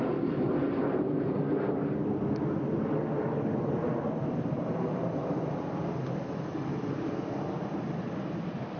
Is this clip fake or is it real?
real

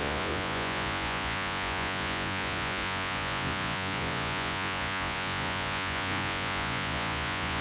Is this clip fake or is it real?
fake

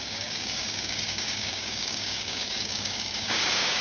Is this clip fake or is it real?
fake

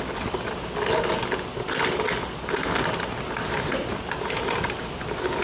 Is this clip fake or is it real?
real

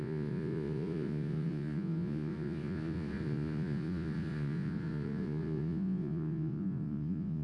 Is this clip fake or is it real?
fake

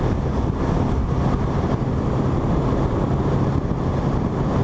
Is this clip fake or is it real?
real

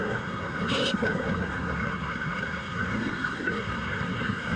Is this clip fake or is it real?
fake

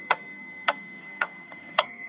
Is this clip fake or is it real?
fake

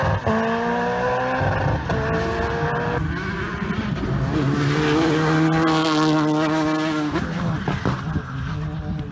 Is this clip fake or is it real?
real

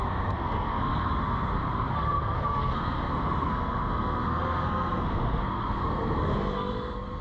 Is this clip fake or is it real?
fake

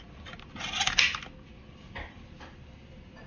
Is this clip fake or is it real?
real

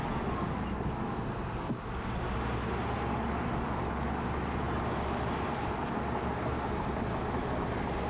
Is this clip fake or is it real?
real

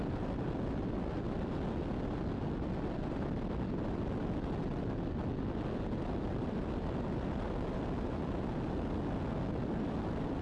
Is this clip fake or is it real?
real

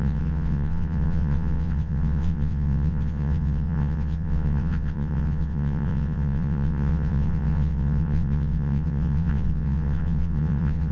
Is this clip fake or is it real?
fake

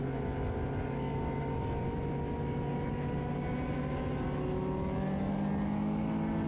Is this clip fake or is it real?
real